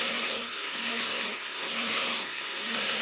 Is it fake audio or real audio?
fake